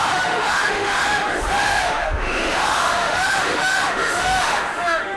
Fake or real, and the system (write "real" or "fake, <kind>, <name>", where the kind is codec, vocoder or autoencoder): fake, autoencoder, DAC-VAE